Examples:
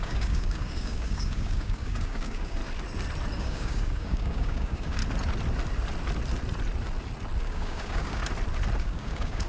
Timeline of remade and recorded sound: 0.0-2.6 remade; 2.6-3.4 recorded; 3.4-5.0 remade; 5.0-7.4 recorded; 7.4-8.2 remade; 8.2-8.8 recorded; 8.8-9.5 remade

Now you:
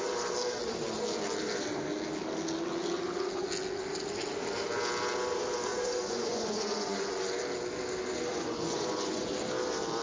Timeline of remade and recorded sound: 0.0-5.7 recorded; 5.7-7.2 remade; 7.2-8.3 recorded; 8.3-9.3 remade; 9.3-10.0 recorded

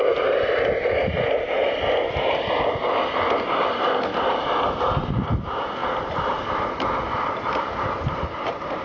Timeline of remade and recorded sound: 0.0-8.8 recorded

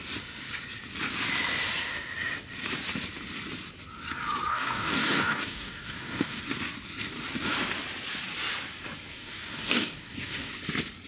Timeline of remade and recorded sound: 0.0-4.5 recorded; 4.5-6.4 remade; 6.4-9.1 recorded; 9.1-10.5 remade; 10.5-11.1 recorded

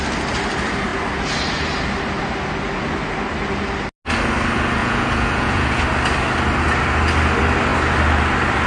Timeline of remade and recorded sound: 0.0-4.8 recorded; 4.8-5.8 remade; 5.8-8.7 recorded

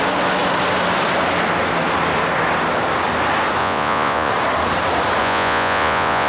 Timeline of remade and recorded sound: 0.0-3.6 recorded; 3.6-4.3 remade; 4.3-5.2 recorded; 5.2-6.3 remade

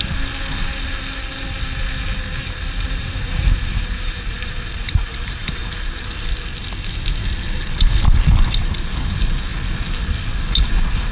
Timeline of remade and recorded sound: 0.0-2.4 recorded; 2.4-5.7 remade; 5.7-11.1 recorded